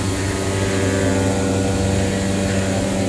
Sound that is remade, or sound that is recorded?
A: recorded